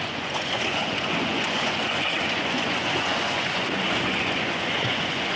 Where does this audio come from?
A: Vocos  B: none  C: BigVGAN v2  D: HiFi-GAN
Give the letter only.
A